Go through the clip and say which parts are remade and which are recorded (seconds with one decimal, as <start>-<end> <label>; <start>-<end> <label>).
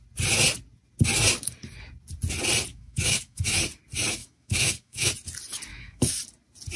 0.0-2.7 recorded; 2.7-3.6 remade; 3.6-4.2 recorded; 4.2-5.1 remade; 5.1-5.7 recorded; 5.7-6.2 remade; 6.2-6.8 recorded